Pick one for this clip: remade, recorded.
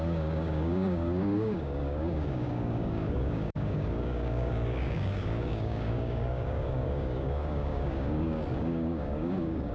remade